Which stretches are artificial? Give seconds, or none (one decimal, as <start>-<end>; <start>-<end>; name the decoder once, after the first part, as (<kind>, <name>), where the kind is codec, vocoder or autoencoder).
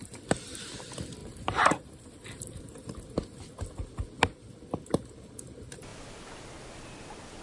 1.2-2.6 (vocoder, BigVGAN v2)